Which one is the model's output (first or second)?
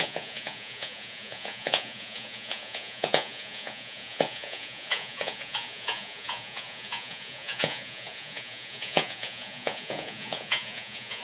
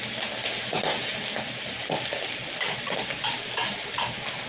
first